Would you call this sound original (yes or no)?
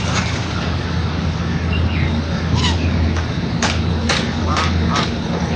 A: no